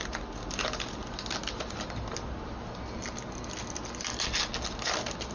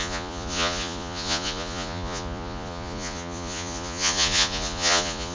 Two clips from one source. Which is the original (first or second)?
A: first